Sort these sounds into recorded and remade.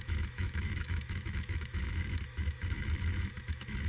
remade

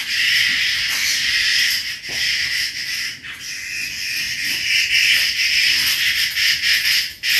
recorded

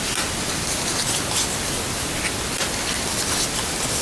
recorded